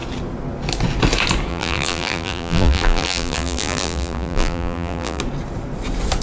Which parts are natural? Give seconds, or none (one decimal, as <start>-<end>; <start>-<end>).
0.0-1.5; 5.2-6.2